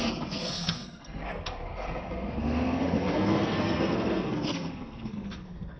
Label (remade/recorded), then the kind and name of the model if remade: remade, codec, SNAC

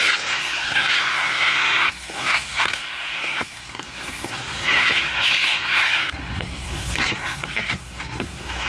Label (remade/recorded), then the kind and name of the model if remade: remade, codec, SNAC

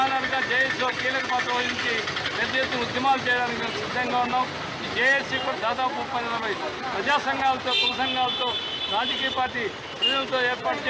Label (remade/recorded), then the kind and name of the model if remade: recorded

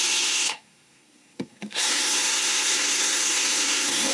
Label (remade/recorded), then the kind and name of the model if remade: remade, codec, SNAC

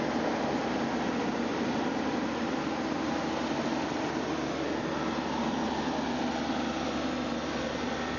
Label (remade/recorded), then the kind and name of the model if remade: recorded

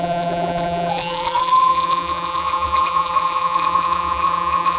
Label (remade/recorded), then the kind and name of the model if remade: remade, vocoder, BigVGAN v2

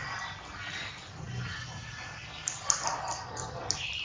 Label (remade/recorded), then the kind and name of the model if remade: recorded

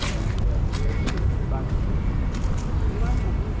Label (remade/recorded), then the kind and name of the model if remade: recorded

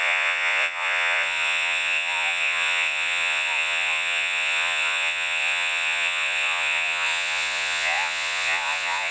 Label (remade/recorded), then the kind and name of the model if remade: remade, vocoder, Vocos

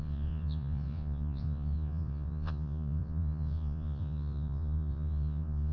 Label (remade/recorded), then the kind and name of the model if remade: remade, vocoder, Vocos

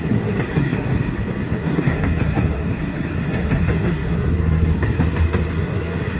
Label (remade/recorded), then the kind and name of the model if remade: remade, codec, SNAC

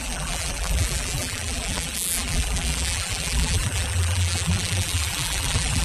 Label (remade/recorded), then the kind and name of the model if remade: remade, vocoder, BigVGAN v2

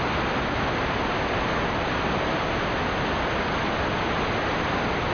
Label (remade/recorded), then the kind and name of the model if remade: recorded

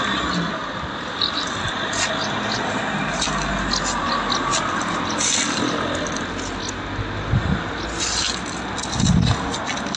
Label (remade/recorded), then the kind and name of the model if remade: recorded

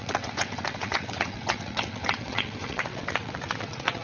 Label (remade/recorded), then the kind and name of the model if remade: remade, vocoder, WaveNeXt